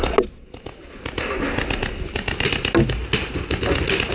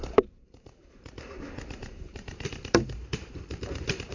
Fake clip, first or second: second